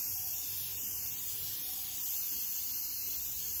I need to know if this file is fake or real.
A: fake